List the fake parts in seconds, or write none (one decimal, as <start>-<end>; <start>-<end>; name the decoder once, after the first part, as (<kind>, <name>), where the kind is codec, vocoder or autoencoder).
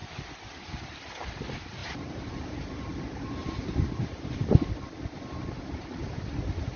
0.0-1.0 (vocoder, BigVGAN v2); 1.8-4.3; 5.4-6.3